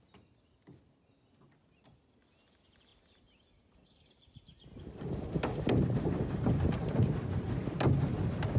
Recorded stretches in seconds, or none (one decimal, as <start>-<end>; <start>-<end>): 0.0-8.6